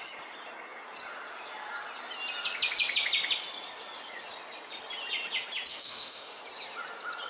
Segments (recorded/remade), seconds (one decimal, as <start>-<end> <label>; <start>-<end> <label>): 0.0-5.7 recorded; 5.7-6.4 remade; 6.4-7.3 recorded